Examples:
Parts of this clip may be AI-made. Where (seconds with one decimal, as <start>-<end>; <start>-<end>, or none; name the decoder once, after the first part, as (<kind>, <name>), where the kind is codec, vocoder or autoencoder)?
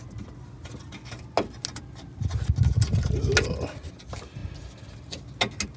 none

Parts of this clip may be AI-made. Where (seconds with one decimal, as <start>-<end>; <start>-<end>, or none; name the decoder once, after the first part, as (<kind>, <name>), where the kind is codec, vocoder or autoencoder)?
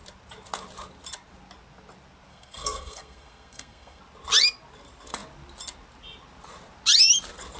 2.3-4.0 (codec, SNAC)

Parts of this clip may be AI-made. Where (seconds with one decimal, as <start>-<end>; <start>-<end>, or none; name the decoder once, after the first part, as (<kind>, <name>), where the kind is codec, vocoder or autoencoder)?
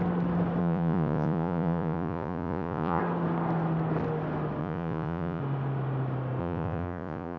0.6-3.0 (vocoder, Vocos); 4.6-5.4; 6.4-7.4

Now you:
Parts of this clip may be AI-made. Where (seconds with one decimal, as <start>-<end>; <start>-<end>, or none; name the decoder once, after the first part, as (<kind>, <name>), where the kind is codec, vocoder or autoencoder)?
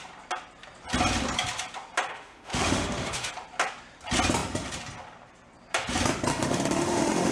2.1-3.3 (autoencoder, DAC-VAE); 6.3-7.3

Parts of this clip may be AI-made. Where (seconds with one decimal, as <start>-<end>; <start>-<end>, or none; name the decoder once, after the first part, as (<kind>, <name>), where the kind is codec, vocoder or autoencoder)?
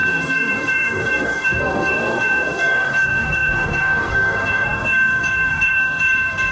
0.0-6.5 (codec, SNAC)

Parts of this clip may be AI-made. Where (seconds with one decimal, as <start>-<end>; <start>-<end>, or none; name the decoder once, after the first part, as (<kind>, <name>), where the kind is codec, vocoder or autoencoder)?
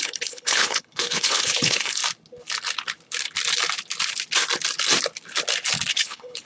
0.0-2.0 (codec, HILCodec); 5.9-6.5